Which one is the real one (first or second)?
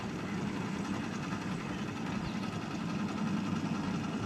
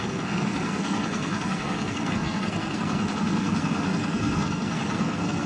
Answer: first